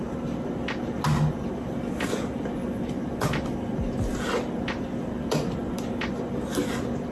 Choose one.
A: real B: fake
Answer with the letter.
A